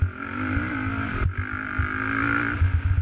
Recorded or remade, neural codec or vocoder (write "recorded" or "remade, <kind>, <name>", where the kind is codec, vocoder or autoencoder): recorded